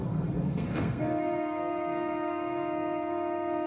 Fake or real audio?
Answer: fake